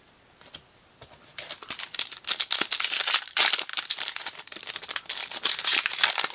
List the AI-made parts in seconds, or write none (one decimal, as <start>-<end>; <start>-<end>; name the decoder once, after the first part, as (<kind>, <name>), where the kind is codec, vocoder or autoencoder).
none